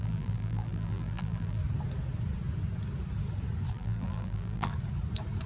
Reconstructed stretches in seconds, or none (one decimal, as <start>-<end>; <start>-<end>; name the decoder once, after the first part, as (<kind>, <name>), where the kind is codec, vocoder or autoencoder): 0.0-1.6 (vocoder, BigVGAN v2); 3.7-4.7